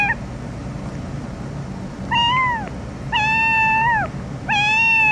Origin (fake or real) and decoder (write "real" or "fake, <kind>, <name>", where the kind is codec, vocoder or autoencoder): real